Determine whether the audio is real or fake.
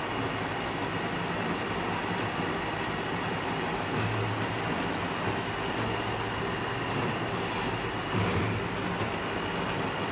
real